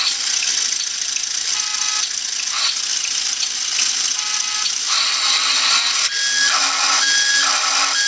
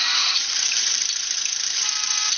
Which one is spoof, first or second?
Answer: second